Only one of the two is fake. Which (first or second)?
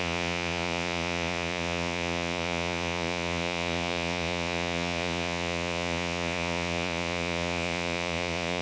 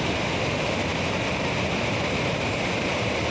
first